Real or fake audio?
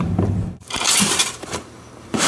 fake